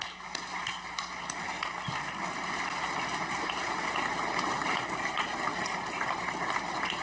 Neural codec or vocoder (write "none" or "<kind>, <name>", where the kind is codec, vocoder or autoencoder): none